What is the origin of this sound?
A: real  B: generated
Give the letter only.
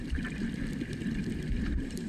B